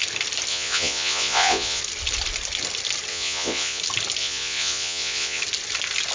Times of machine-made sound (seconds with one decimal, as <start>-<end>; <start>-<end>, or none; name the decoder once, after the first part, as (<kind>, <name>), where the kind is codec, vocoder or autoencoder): 0.5-1.8 (vocoder, Vocos); 3.1-3.8; 4.2-5.4

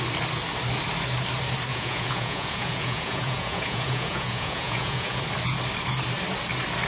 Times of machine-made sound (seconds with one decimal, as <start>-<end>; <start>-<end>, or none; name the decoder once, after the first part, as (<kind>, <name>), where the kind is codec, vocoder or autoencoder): 1.7-5.2 (vocoder, Vocos)